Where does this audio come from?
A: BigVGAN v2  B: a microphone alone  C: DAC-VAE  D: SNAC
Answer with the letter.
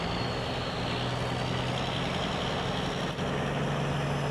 B